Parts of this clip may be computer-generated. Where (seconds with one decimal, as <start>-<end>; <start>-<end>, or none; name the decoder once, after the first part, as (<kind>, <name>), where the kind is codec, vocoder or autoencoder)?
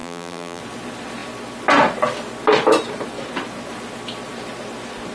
0.0-0.6 (vocoder, BigVGAN v2)